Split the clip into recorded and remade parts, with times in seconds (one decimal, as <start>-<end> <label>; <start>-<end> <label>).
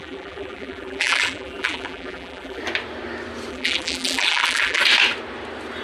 0.0-2.6 remade; 2.6-3.5 recorded; 3.5-4.8 remade; 4.8-5.8 recorded